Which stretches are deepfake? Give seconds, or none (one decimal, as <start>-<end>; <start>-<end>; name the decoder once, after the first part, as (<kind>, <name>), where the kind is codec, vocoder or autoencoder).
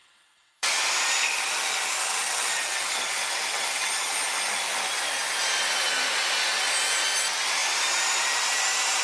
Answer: 0.0-0.8 (vocoder, WaveNeXt); 2.0-3.9